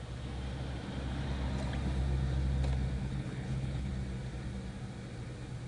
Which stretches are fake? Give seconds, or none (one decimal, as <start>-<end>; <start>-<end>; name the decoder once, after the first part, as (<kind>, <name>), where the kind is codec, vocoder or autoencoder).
3.0-3.9 (codec, HILCodec)